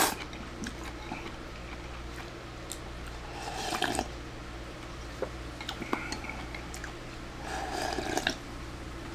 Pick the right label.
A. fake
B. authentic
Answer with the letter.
B